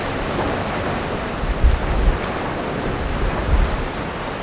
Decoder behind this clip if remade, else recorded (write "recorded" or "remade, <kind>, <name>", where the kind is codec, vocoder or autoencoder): recorded